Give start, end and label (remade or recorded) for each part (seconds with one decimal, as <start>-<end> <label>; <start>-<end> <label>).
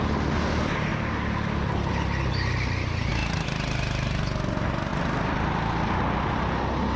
0.0-7.0 recorded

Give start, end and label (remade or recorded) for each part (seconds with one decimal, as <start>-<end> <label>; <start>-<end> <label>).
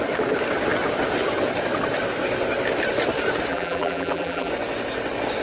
0.0-3.5 recorded; 3.5-4.5 remade; 4.5-5.4 recorded